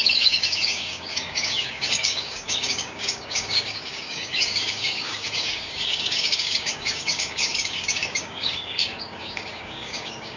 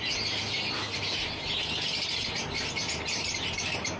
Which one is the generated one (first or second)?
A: first